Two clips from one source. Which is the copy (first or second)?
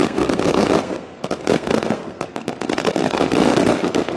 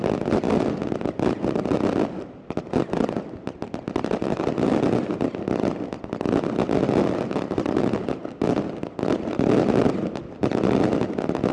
first